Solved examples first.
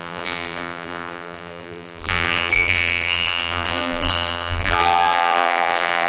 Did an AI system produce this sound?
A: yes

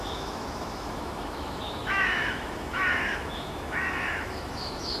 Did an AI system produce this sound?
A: yes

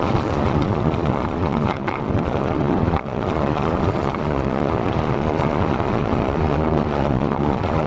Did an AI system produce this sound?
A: yes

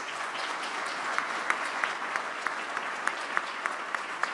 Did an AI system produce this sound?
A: yes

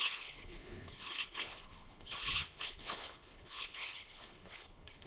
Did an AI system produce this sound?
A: yes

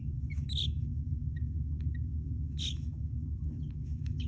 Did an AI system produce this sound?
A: yes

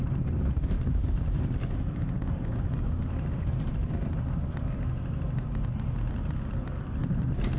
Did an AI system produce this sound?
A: no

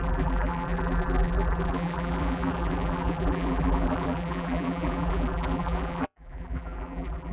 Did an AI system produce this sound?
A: yes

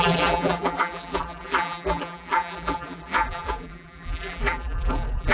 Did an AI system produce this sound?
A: yes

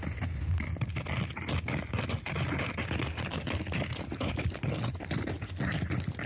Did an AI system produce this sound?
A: no